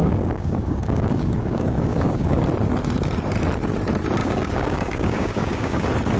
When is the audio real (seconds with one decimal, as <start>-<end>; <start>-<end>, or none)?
2.4-4.2; 5.8-6.2